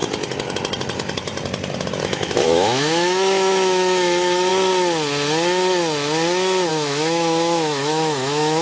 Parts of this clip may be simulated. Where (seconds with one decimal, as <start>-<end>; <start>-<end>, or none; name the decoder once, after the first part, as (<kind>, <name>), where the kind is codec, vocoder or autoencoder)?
2.0-4.5 (autoencoder, DAC-VAE); 6.7-8.6